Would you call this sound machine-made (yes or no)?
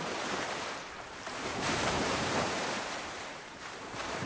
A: yes